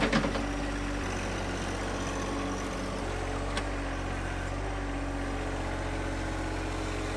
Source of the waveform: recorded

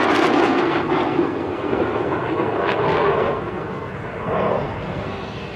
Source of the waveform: remade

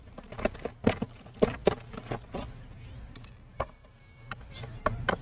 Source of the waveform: recorded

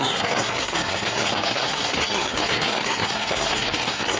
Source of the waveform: remade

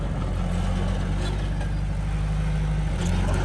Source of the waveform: recorded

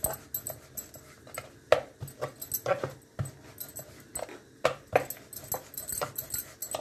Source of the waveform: recorded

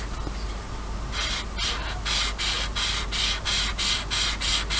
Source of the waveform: recorded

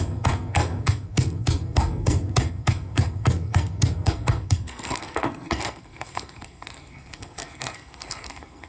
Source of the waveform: remade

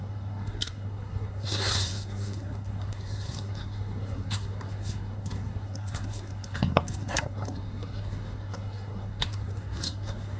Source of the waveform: remade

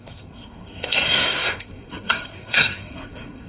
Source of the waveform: remade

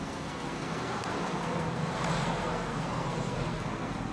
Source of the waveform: remade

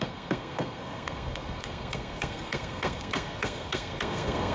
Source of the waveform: remade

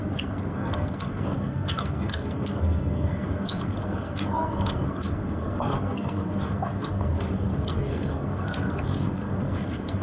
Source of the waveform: remade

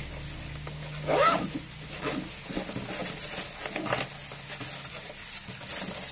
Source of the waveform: recorded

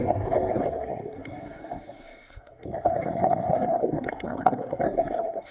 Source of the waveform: remade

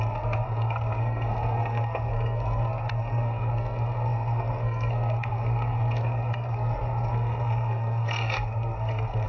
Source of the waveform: remade